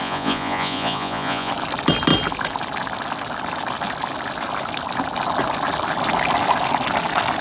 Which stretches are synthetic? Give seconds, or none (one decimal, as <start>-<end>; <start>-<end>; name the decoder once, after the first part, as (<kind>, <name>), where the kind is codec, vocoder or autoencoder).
0.0-1.5 (vocoder, Vocos)